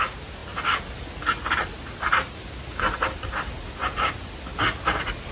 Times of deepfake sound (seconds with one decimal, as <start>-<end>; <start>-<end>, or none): none